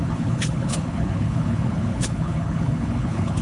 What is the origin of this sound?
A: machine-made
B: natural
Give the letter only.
A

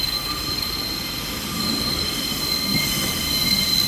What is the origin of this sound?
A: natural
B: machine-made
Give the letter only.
A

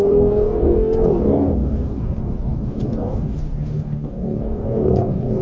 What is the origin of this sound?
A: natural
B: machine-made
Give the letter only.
B